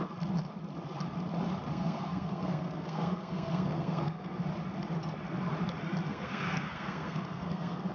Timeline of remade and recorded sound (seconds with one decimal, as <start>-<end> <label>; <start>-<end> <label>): 0.0-1.7 recorded; 1.7-4.4 remade; 4.4-6.1 recorded; 6.1-7.9 remade